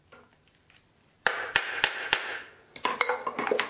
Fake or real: real